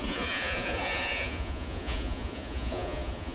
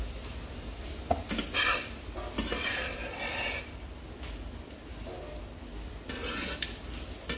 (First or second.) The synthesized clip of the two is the first